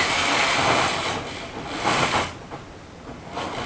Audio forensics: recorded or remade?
recorded